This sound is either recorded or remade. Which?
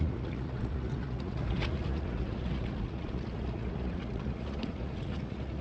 remade